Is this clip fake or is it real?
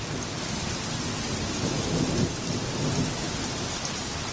real